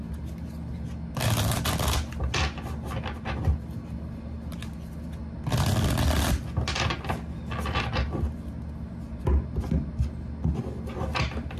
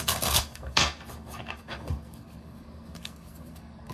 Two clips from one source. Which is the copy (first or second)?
second